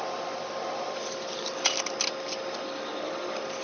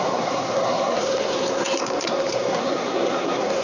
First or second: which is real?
first